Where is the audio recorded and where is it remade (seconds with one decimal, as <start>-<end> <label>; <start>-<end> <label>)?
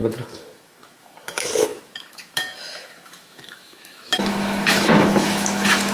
0.0-5.9 remade